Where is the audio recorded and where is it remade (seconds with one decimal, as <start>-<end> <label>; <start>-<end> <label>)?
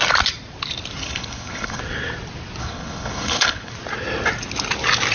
0.0-1.0 recorded; 1.0-1.8 remade; 1.8-2.6 recorded; 2.6-3.7 remade; 3.7-5.1 recorded